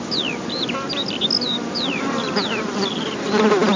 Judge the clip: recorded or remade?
recorded